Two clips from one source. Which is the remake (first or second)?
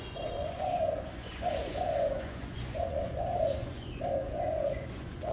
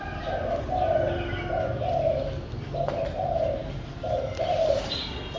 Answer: first